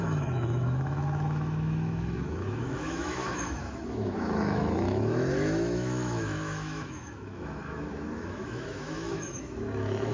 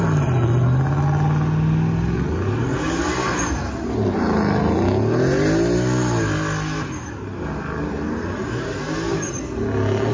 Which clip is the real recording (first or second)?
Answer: second